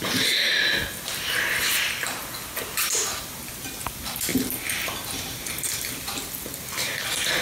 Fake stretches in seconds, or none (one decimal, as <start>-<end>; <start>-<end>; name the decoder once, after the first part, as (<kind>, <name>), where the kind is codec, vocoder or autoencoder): 4.3-7.0 (vocoder, BigVGAN v2)